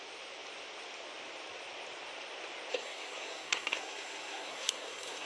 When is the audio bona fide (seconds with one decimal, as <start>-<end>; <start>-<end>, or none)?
0.0-2.7